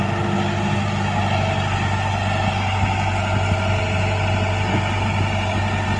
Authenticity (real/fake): real